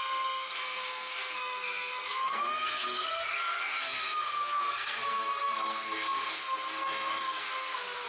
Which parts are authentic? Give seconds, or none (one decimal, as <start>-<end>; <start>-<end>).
none